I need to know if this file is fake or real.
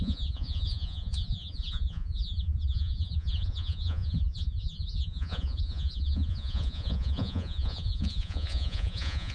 fake